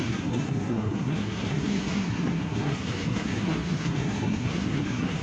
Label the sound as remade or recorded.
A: remade